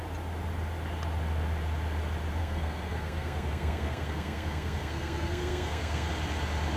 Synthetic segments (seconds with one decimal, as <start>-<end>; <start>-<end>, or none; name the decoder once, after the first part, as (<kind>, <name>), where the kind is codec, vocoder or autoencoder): 2.4-6.1 (codec, SNAC)